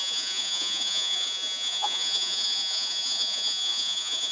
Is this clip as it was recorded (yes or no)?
no